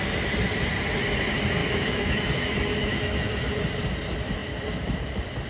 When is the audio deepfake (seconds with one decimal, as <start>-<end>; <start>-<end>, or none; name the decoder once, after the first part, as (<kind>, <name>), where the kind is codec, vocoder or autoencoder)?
1.6-3.6 (autoencoder, DAC-VAE)